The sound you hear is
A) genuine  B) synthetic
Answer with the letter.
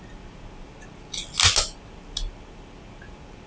A